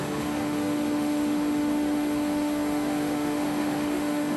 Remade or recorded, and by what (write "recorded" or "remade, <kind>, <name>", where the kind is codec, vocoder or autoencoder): remade, autoencoder, DAC-VAE